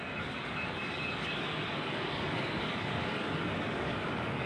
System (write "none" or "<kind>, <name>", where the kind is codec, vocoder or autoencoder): codec, DAC